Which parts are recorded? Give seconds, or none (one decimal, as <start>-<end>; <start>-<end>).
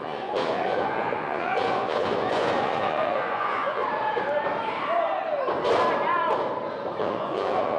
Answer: 3.8-7.0